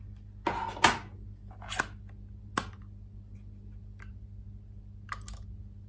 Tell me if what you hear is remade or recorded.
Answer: recorded